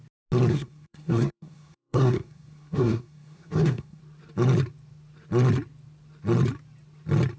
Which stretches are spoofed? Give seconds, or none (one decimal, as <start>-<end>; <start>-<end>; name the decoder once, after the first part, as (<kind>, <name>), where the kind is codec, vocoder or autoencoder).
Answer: 0.5-4.0 (codec, SNAC)